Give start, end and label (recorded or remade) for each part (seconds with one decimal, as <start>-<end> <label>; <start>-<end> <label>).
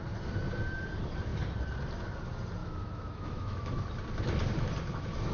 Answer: 0.0-2.6 recorded; 2.6-3.8 remade; 3.8-5.3 recorded